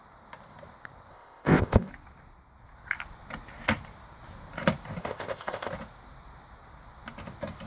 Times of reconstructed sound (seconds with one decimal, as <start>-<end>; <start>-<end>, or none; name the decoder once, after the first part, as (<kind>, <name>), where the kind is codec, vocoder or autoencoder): 1.1-1.9 (codec, ZipCodec); 5.0-5.7